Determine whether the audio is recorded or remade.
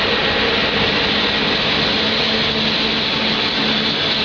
recorded